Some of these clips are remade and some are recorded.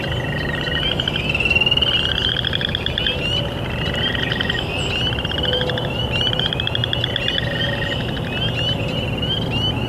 recorded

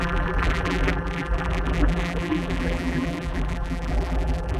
remade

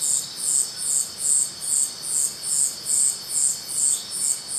recorded